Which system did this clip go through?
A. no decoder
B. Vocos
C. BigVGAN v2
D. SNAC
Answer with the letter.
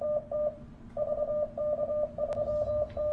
A